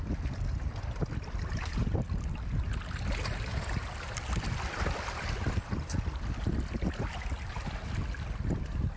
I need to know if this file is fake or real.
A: real